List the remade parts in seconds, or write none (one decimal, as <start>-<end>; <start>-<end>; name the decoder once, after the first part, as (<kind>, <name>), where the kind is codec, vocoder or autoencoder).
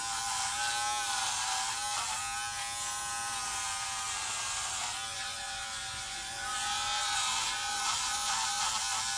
5.1-8.7 (vocoder, Vocos)